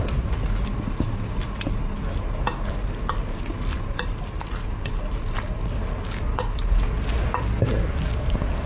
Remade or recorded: recorded